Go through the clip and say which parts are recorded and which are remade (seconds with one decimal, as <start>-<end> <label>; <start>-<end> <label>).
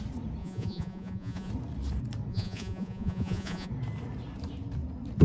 0.0-0.4 recorded; 0.4-1.5 remade; 1.5-2.3 recorded; 2.3-3.7 remade; 3.7-5.2 recorded